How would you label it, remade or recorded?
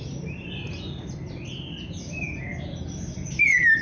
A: recorded